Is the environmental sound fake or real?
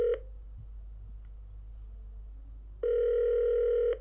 real